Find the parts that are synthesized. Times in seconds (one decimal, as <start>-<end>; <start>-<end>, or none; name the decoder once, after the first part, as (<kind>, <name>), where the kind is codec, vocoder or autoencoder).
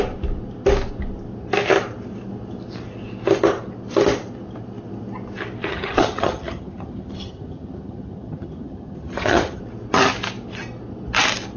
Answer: 5.7-9.6 (vocoder, HiFi-GAN)